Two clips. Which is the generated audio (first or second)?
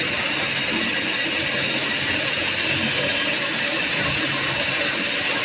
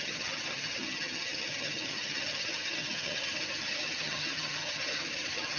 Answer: second